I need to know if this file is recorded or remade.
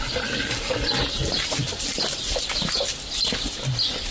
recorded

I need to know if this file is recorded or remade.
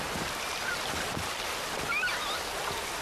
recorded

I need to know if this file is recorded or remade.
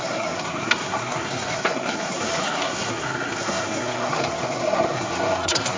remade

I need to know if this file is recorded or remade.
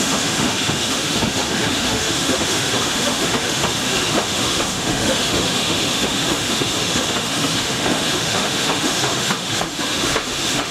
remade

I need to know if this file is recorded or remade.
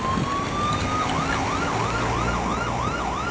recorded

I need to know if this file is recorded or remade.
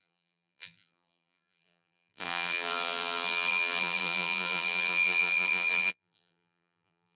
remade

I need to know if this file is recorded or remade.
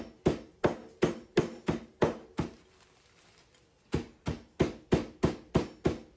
recorded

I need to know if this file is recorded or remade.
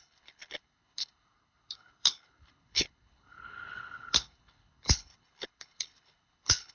remade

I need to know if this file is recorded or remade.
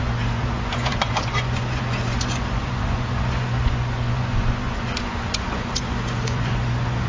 remade